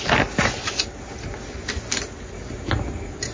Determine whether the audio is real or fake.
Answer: real